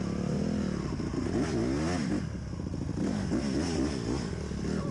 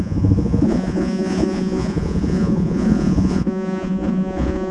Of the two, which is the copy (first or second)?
second